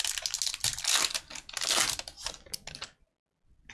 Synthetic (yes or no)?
no